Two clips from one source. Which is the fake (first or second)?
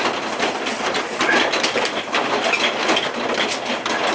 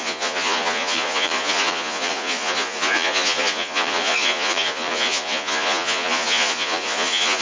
second